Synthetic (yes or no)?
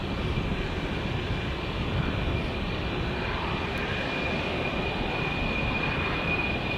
yes